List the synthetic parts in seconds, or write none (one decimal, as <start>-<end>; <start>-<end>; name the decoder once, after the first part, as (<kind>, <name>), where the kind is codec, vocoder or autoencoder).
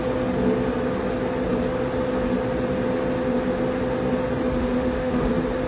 4.7-5.3 (autoencoder, DAC-VAE)